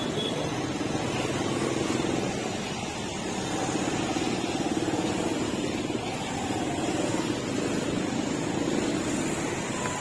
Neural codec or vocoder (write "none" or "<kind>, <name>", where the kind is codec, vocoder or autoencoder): none